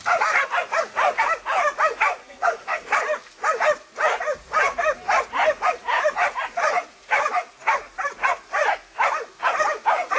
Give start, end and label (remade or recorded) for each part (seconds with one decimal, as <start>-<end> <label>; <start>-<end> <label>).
0.0-2.2 recorded; 2.2-2.9 remade; 2.9-10.2 recorded